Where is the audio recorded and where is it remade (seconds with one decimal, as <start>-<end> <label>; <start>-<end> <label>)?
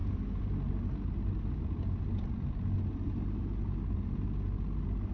0.0-5.1 recorded